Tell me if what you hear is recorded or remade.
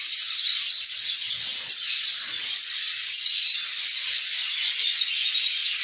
recorded